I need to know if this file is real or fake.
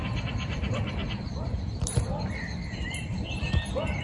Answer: fake